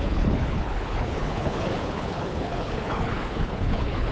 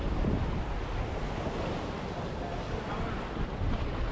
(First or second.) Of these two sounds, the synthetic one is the first